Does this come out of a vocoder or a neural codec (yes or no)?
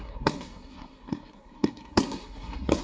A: yes